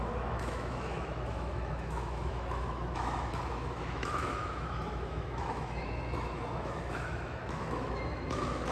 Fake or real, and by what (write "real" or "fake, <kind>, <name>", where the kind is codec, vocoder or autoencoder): fake, autoencoder, DAC-VAE